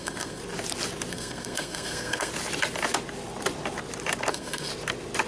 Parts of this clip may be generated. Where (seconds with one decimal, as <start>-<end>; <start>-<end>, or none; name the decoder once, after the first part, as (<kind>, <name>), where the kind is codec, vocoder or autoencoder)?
0.0-0.4 (codec, SNAC); 1.1-2.3; 4.3-4.7